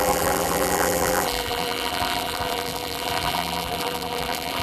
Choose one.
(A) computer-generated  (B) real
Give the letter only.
A